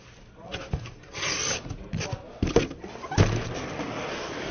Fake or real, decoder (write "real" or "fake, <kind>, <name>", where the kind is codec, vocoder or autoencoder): real